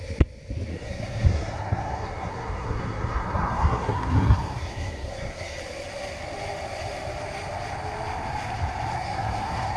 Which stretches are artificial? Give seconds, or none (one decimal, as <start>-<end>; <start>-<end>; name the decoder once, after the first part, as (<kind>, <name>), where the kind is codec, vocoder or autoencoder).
0.7-5.6 (codec, SNAC); 8.9-9.8

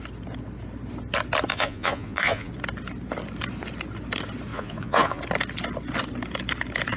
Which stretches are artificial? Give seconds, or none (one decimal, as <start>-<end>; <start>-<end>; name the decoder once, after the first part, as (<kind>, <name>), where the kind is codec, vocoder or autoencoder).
1.5-2.5 (vocoder, Vocos); 4.5-5.2

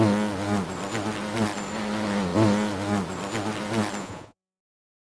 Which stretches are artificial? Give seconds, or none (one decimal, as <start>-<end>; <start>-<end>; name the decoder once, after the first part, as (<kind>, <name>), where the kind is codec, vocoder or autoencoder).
4.0-4.6 (vocoder, Vocos)

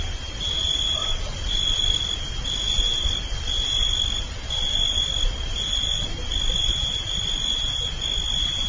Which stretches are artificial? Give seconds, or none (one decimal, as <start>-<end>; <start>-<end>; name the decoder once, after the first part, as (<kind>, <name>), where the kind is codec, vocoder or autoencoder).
none